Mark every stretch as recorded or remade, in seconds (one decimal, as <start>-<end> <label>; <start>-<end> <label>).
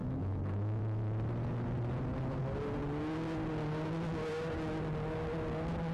0.0-0.8 remade; 0.8-5.9 recorded